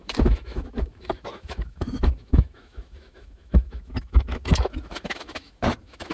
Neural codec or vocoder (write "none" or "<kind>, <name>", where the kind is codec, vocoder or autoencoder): autoencoder, DAC-VAE